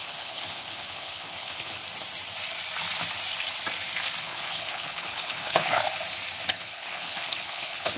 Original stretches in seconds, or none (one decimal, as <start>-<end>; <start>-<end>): 1.8-4.2; 5.8-6.5